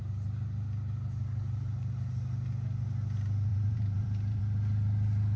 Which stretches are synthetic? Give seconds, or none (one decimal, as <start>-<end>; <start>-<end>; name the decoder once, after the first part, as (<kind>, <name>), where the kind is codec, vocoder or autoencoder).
3.5-4.4 (vocoder, BigVGAN v2)